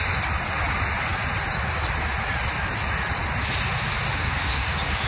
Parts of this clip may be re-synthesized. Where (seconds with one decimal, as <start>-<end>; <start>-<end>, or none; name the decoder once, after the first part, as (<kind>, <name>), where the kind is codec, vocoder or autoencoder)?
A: 4.2-5.1 (codec, DAC)